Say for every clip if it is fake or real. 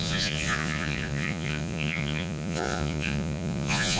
fake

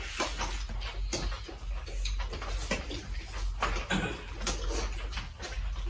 real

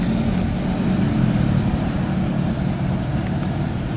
real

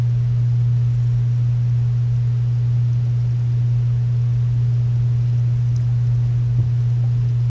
real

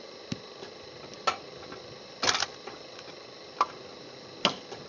real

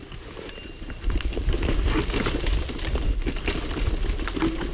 real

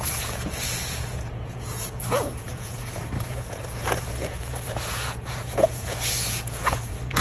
fake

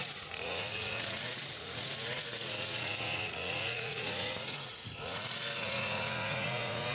fake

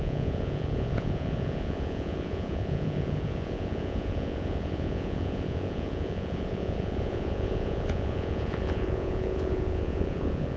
fake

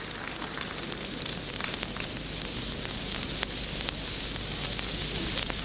real